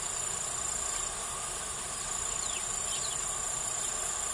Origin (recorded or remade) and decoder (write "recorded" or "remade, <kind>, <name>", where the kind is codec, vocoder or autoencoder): recorded